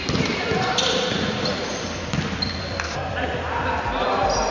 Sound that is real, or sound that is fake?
real